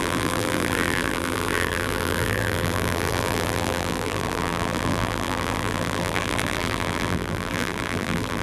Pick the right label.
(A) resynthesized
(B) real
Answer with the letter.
A